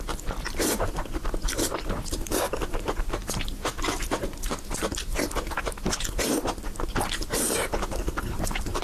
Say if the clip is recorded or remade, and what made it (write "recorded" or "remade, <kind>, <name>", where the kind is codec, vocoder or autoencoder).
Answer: recorded